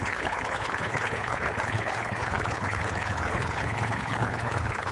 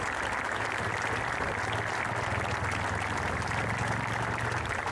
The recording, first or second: second